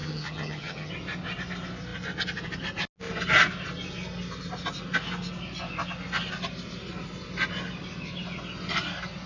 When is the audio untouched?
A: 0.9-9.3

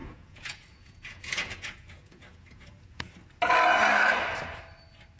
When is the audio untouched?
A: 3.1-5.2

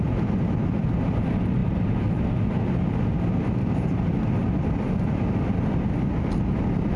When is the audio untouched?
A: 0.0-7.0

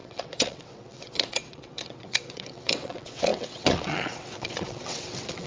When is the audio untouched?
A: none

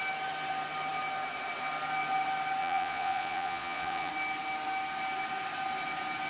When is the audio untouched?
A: 0.0-2.6; 4.1-6.3

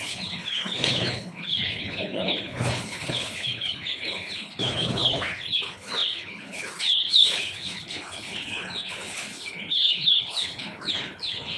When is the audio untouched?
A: none